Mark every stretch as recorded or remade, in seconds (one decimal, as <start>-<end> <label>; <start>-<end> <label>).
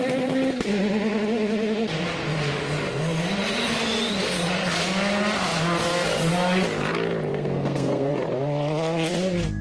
0.0-7.3 recorded; 7.3-8.1 remade; 8.1-9.6 recorded